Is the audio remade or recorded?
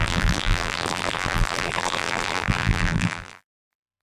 remade